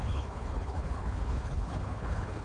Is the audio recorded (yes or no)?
no